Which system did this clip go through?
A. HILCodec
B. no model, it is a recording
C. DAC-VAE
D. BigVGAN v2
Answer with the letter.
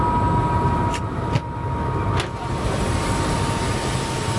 B